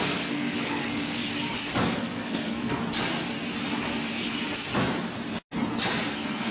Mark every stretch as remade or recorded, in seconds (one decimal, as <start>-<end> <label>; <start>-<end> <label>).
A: 0.0-1.2 remade; 1.2-1.9 recorded; 1.9-2.8 remade; 2.8-6.1 recorded; 6.1-6.5 remade